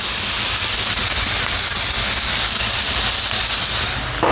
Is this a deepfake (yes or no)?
no